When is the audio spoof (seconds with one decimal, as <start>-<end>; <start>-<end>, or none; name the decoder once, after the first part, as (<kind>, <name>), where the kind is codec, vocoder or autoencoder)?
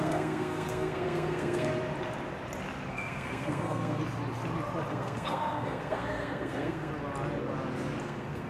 0.0-1.7 (codec, SNAC); 2.9-4.0; 4.9-6.9; 8.0-8.5